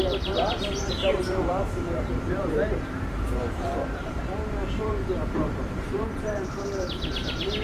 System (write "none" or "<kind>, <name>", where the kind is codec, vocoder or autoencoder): vocoder, BigVGAN v2